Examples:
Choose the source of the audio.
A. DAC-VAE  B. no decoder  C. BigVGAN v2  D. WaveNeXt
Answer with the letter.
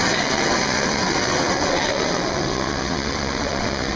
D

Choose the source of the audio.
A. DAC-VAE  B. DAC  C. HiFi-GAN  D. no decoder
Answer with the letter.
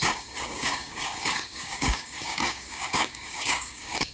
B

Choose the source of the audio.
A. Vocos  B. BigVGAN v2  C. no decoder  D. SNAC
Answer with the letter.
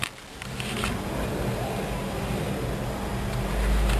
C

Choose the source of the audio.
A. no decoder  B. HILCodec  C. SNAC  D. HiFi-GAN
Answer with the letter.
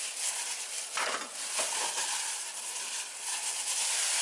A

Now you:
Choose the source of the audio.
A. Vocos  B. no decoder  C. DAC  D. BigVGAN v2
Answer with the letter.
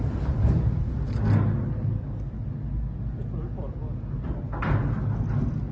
B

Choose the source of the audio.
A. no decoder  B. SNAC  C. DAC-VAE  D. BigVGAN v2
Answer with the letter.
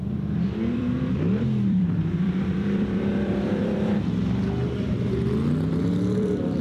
D